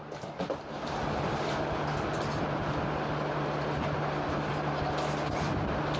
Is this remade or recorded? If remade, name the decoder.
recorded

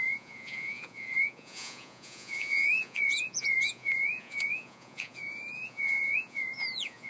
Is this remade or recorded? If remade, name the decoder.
remade, vocoder, Vocos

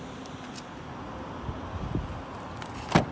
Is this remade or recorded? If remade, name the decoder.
recorded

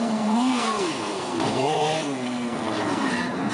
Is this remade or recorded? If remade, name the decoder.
remade, codec, SNAC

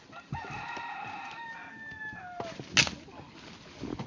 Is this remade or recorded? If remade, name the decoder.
recorded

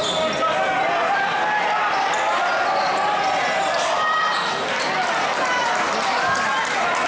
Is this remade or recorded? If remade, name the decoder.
recorded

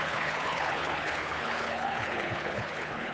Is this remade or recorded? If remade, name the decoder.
remade, codec, HILCodec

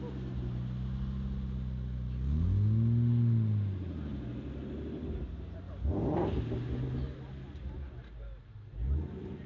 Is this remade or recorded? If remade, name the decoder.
recorded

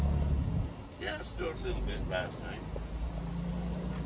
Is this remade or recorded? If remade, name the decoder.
recorded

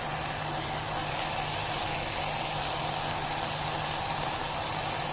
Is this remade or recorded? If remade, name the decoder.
recorded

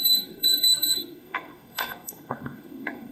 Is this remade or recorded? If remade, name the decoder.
remade, codec, SNAC